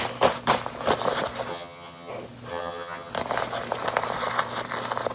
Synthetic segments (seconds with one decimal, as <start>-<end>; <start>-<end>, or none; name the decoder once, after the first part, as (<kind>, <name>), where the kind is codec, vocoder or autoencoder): 1.5-2.1 (vocoder, HiFi-GAN); 2.5-3.1